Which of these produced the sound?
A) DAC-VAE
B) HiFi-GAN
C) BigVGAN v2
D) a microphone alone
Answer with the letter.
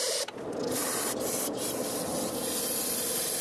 D